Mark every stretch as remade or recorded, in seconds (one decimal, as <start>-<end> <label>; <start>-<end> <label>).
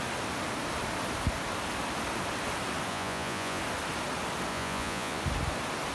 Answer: 0.0-2.9 recorded; 2.9-3.6 remade; 3.6-4.5 recorded; 4.5-5.2 remade; 5.2-5.9 recorded